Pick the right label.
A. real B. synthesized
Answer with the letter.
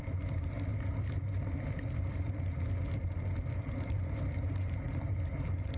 B